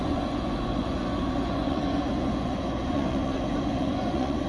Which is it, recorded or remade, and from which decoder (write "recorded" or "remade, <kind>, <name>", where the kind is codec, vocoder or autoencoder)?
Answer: remade, vocoder, Vocos